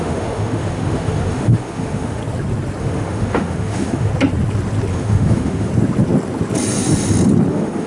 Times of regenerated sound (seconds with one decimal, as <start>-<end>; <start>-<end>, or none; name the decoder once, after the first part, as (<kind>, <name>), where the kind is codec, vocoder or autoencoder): 0.0-2.2 (autoencoder, DAC-VAE); 2.8-4.1; 4.9-5.7; 7.5-7.9